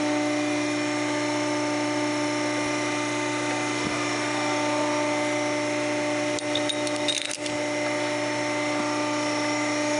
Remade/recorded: recorded